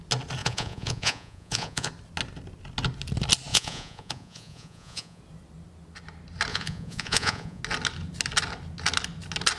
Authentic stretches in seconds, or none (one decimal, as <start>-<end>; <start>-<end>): 0.0-0.4; 1.9-3.5; 5.2-6.5; 7.6-9.6